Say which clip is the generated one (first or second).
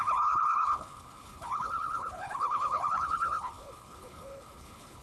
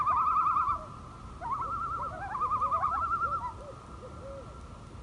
first